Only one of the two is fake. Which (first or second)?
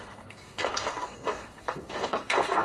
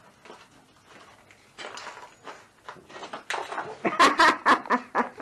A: first